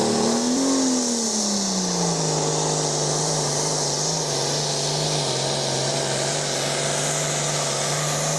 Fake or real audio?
real